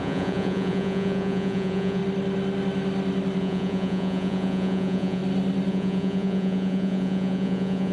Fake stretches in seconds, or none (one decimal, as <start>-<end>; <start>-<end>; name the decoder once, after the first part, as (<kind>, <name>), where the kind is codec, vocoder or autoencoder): 0.0-2.0 (vocoder, Vocos); 3.4-5.2; 5.7-7.9